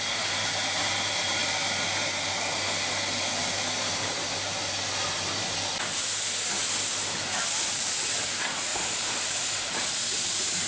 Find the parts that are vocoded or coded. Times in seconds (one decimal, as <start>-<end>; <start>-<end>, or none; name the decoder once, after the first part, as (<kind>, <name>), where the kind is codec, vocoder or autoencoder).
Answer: 0.0-1.4 (vocoder, BigVGAN v2); 2.9-4.2; 7.6-10.7